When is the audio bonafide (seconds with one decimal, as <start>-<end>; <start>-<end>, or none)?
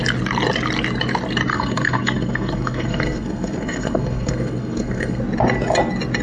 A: 0.0-1.5; 5.2-6.2